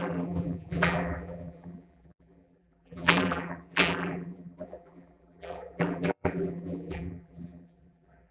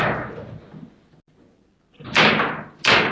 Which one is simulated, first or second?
first